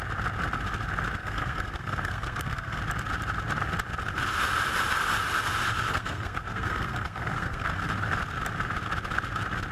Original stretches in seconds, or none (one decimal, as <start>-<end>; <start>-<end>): 0.0-1.2; 2.8-5.9; 7.8-9.7